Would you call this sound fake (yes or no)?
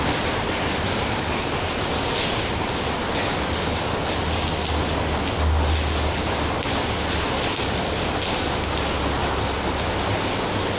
no